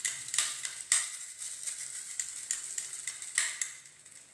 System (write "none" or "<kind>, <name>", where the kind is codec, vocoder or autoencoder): none